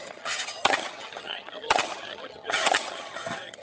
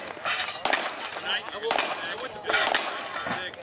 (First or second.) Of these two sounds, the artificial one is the first